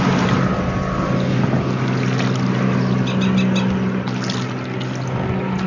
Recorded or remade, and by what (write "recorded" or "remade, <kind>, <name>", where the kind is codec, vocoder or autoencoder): recorded